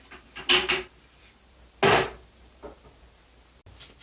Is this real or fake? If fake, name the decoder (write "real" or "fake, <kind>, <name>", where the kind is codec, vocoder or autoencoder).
real